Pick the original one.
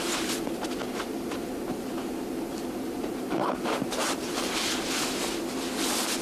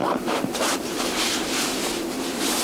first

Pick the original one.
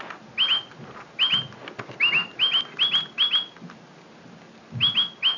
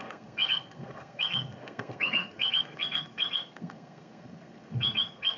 first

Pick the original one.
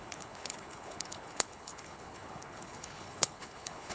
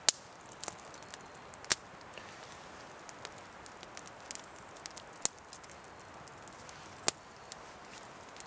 second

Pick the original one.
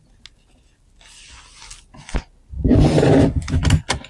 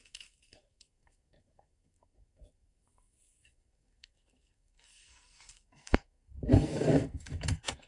first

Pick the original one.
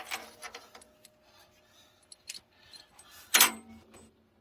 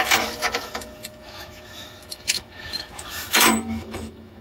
first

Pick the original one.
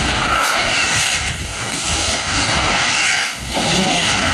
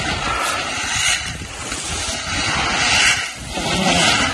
second